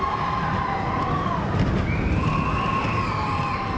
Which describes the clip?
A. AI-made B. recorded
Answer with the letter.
B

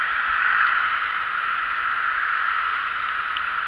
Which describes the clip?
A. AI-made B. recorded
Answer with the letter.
B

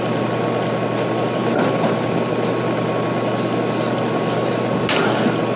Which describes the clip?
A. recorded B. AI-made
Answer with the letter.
A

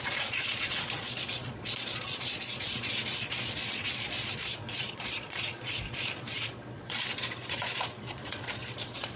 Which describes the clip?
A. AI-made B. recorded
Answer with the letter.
A